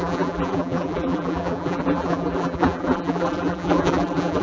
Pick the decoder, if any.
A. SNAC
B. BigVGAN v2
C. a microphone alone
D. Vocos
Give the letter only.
B